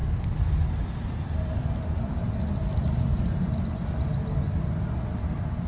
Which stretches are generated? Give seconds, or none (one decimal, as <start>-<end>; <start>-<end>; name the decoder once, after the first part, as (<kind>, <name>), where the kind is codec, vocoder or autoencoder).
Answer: none